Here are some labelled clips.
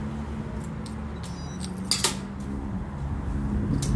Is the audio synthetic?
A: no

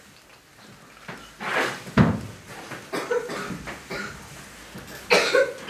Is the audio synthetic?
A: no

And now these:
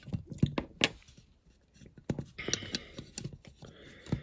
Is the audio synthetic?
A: no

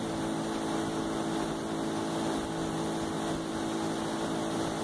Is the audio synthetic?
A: no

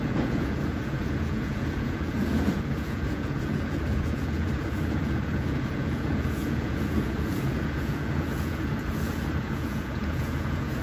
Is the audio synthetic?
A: yes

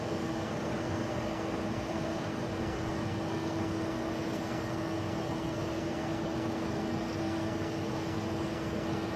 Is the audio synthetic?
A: yes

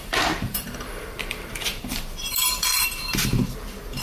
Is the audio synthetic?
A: yes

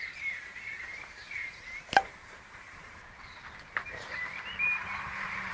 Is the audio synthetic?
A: yes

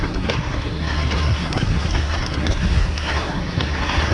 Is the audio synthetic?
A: yes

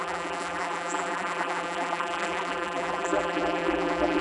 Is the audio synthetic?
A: yes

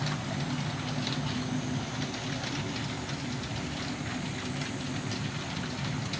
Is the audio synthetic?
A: no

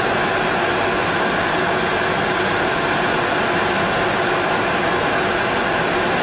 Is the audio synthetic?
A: no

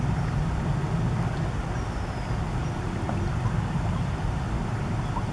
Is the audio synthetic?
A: no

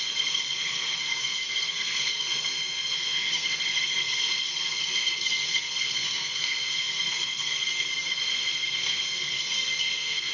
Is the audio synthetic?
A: yes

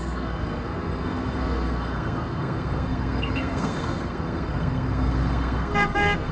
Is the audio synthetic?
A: yes